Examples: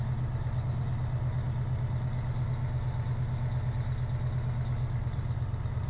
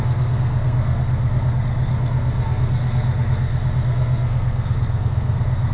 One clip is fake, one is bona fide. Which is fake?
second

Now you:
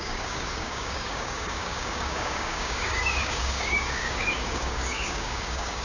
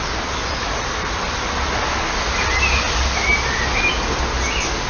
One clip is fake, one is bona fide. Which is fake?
first